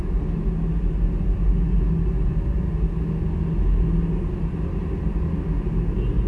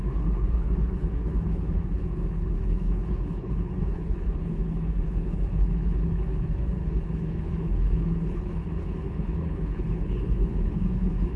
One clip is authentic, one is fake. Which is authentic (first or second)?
first